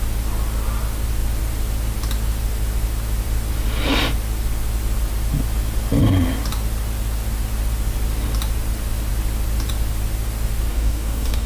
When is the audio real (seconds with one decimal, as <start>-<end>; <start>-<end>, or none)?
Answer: 0.0-10.7